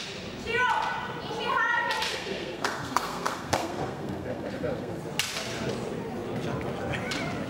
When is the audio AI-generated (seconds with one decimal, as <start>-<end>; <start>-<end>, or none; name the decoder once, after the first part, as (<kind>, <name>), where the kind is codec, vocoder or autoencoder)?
2.1-5.0 (codec, SNAC)